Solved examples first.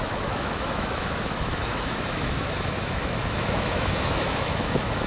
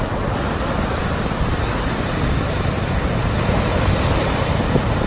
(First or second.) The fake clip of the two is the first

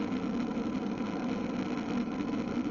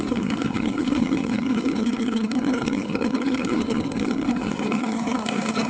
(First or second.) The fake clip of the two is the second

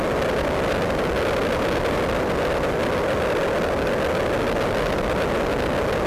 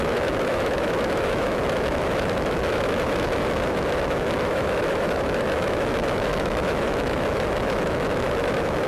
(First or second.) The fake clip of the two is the second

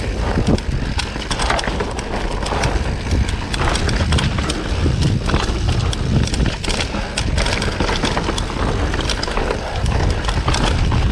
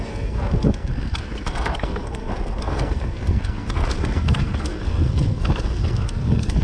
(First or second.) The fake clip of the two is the second